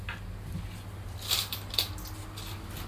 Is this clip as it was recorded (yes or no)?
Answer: yes